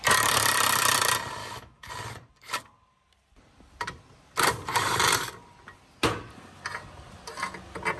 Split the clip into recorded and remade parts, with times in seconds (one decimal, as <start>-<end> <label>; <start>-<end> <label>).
0.0-1.4 recorded; 1.4-1.9 remade; 1.9-8.0 recorded